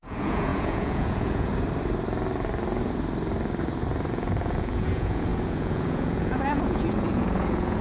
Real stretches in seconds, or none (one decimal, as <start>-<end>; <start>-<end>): 1.5-4.1